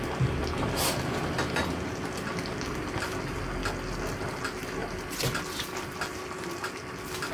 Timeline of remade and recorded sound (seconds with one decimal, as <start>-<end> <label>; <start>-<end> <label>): 0.0-7.3 recorded